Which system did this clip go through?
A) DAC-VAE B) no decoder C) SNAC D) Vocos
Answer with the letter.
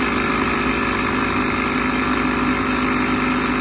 B